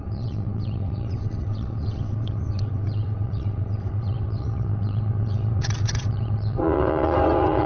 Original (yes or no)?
no